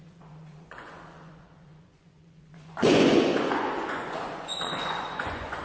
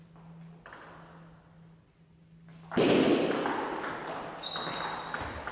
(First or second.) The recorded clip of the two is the second